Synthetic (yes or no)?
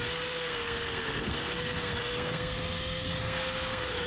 yes